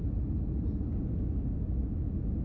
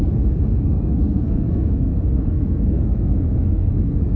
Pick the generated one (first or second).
second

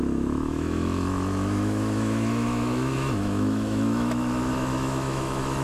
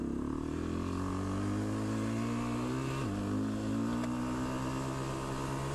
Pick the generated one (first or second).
first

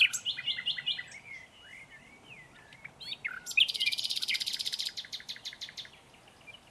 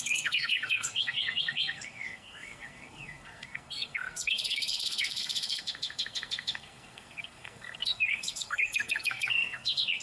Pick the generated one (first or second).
second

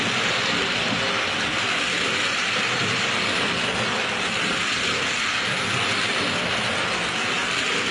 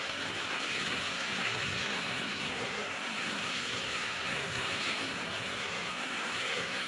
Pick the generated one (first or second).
second